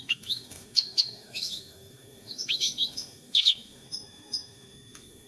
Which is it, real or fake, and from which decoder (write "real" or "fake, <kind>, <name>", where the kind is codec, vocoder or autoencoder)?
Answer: fake, autoencoder, DAC-VAE